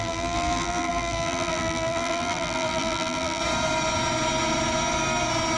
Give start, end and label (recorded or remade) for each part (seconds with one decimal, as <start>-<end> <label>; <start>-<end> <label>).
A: 0.0-3.4 remade; 3.4-5.6 recorded